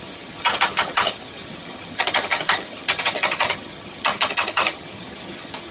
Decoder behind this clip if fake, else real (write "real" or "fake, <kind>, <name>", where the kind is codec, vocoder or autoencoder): fake, vocoder, HiFi-GAN